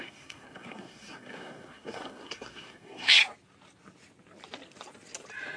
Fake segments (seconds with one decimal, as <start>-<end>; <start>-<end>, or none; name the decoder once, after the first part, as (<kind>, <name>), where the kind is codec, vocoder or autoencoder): 0.0-3.2 (codec, SNAC)